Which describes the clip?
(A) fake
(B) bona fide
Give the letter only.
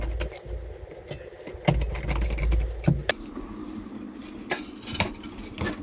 B